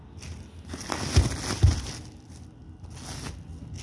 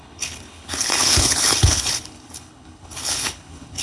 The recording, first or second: first